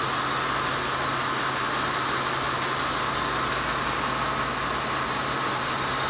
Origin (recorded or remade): recorded